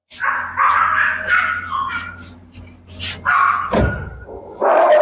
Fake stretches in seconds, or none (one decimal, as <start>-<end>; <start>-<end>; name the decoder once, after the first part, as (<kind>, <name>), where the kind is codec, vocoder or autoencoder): none